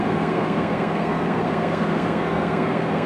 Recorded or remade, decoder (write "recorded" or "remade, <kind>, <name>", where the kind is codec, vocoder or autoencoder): remade, codec, SNAC